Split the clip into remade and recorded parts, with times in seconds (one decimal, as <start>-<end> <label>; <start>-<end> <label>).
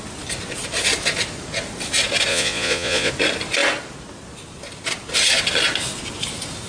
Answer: 0.0-2.3 recorded; 2.3-3.1 remade; 3.1-6.7 recorded